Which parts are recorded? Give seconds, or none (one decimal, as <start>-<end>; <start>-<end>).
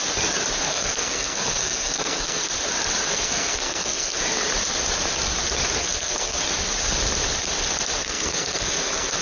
0.0-0.7; 2.5-3.1; 4.2-5.8; 6.4-8.0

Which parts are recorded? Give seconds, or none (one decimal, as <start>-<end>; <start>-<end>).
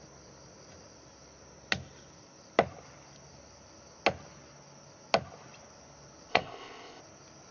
0.0-6.3; 7.0-7.5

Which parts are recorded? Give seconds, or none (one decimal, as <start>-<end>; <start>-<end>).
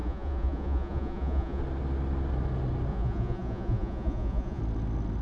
1.6-2.9; 4.6-5.2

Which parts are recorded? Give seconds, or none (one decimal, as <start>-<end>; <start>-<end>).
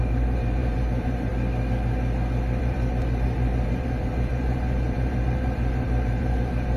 1.3-2.6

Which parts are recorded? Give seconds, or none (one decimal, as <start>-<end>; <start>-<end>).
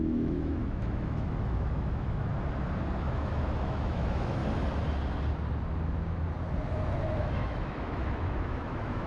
2.3-3.0; 4.4-7.2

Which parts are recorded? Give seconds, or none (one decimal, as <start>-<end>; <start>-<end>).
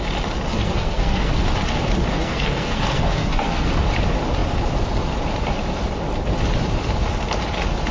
0.0-0.5; 1.3-2.1; 3.7-7.9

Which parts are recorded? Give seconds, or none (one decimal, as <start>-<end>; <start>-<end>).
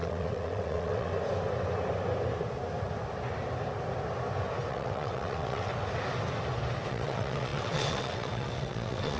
1.1-4.7; 5.7-6.9